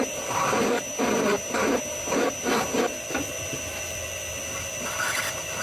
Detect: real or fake real